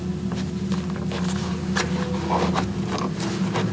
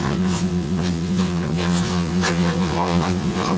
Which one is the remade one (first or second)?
second